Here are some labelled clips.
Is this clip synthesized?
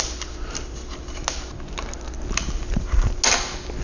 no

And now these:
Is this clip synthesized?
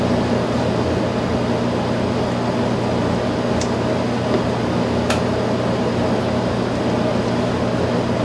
no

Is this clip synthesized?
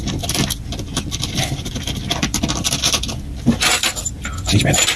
yes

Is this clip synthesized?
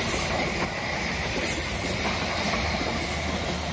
no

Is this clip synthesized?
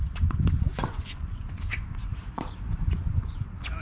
yes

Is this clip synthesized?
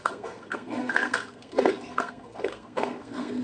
yes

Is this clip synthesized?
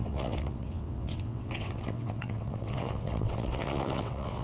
yes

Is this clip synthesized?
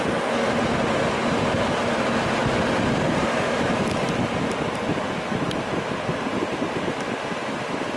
no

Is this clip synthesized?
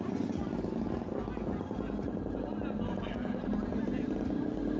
no